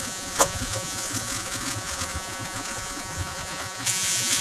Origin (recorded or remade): remade